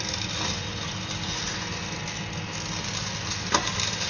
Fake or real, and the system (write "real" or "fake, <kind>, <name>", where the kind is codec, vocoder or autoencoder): real